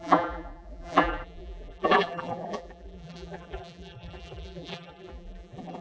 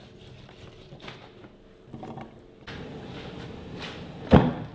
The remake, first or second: first